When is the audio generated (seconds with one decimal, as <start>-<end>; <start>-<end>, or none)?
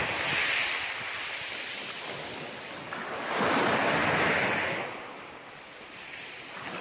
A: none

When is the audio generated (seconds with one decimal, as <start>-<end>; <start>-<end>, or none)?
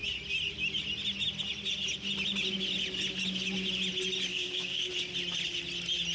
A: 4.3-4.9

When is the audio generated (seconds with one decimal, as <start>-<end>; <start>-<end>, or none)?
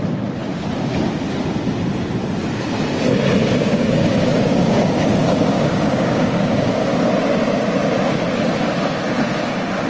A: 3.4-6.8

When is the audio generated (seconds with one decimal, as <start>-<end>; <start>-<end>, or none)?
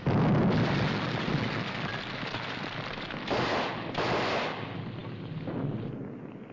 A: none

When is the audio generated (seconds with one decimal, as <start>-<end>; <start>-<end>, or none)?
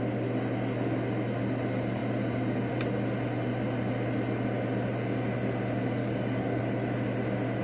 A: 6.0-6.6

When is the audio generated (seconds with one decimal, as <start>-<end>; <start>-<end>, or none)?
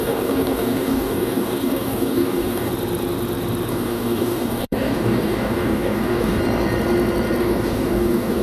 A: 0.0-2.7; 3.7-6.4; 7.4-8.4